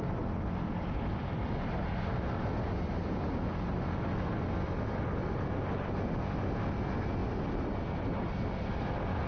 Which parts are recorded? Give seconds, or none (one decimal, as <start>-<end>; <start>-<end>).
0.0-9.3